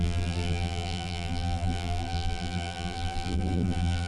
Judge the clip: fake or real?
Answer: fake